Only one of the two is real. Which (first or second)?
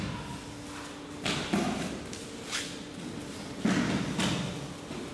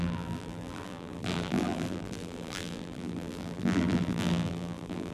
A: first